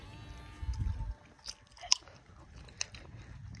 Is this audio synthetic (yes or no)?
no